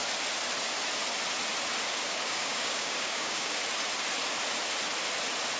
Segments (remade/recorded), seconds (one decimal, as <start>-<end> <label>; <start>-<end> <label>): 0.0-1.9 recorded; 1.9-3.6 remade; 3.6-5.6 recorded